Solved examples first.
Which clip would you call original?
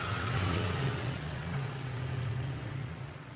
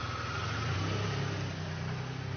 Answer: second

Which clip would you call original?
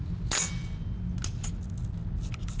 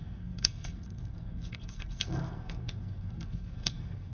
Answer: first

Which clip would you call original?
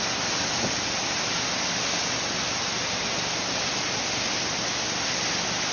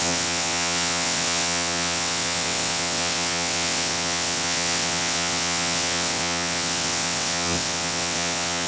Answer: first